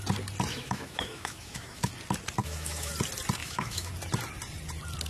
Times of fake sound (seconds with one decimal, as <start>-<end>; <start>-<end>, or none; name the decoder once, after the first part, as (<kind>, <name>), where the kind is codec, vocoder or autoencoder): 0.5-1.9 (autoencoder, DAC-VAE); 2.4-2.9; 3.4-3.9